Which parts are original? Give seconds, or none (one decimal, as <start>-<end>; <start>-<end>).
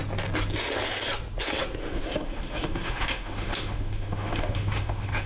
0.0-1.8